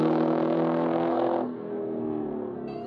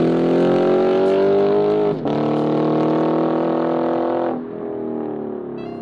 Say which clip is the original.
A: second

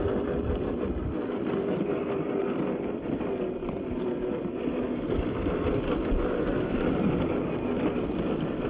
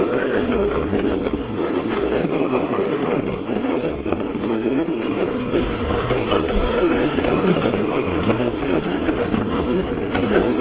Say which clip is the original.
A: first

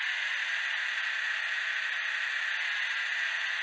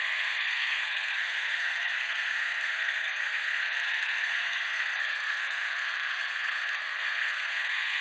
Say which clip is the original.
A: first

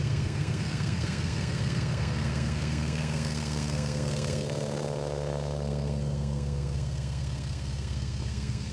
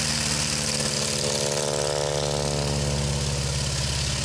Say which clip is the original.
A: second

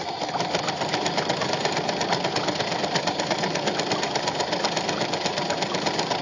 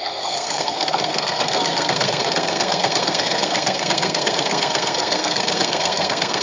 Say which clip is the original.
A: first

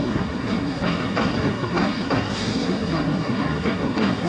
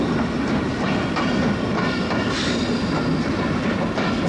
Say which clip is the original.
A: second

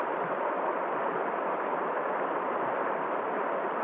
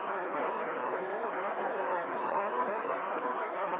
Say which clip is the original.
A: first